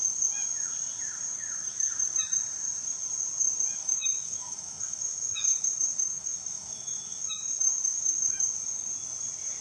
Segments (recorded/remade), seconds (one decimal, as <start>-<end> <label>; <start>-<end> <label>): 0.0-3.8 recorded; 3.8-8.4 remade; 8.4-9.6 recorded